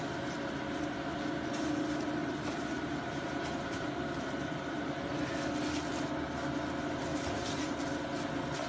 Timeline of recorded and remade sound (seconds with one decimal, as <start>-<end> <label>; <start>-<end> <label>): 0.0-2.2 recorded; 2.2-5.5 remade; 5.5-7.1 recorded; 7.1-7.9 remade; 7.9-8.7 recorded